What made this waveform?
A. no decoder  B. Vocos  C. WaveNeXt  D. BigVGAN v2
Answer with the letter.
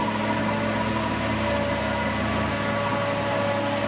A